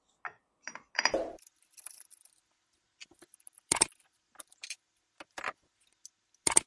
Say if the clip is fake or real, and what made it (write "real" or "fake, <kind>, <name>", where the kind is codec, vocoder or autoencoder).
real